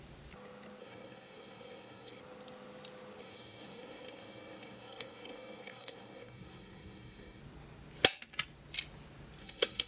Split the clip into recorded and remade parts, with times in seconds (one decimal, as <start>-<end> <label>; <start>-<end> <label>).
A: 0.0-0.8 recorded; 0.8-2.2 remade; 2.2-3.2 recorded; 3.2-7.4 remade; 7.4-9.4 recorded; 9.4-9.9 remade